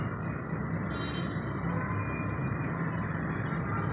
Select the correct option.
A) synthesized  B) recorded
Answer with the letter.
B